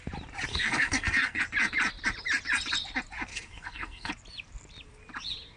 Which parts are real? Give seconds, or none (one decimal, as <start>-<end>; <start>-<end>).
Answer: 0.0-0.5; 1.4-3.3; 4.1-5.6